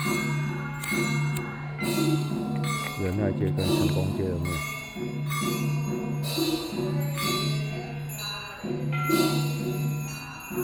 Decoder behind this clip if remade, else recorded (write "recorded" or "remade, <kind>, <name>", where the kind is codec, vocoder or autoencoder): recorded